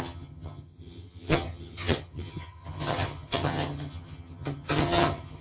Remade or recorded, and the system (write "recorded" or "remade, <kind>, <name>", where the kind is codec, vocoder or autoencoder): remade, vocoder, HiFi-GAN